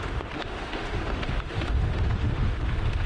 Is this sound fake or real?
fake